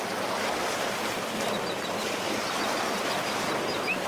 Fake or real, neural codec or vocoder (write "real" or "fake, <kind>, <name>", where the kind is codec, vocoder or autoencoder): real